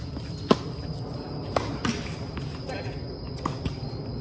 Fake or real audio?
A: real